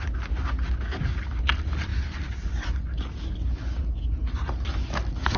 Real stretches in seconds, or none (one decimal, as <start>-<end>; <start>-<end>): 0.0-5.4